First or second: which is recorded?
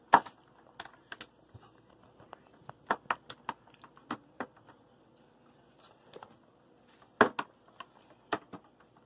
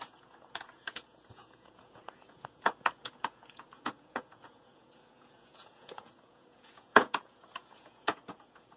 first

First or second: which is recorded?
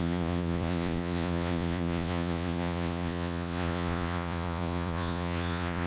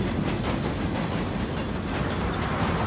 second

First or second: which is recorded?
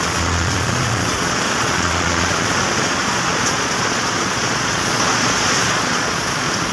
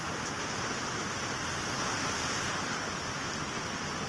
second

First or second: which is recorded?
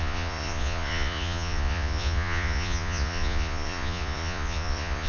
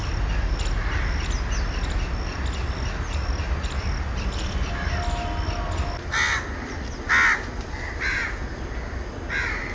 second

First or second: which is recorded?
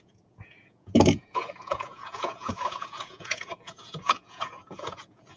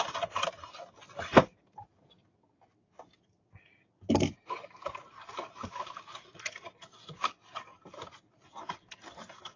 second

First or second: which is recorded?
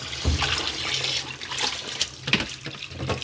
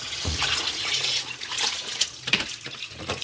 first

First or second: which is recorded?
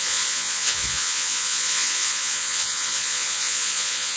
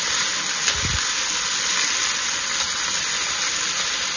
second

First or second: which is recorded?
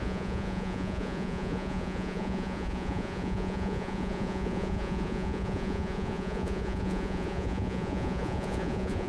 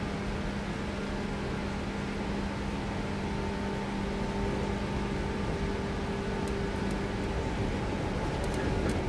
second